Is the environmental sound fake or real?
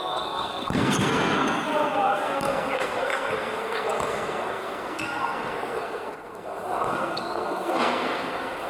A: fake